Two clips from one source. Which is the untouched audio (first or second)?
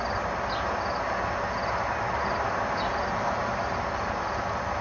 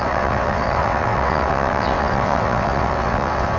first